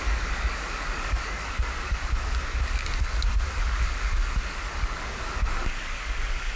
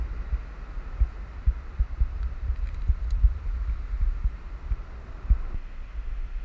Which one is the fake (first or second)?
first